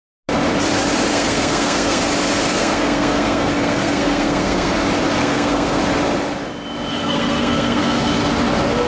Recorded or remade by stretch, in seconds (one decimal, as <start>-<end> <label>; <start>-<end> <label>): 0.0-1.1 recorded; 1.1-2.0 remade; 2.0-2.5 recorded; 2.5-4.7 remade; 4.7-5.2 recorded; 5.2-5.8 remade; 5.8-6.9 recorded; 6.9-8.0 remade; 8.0-8.9 recorded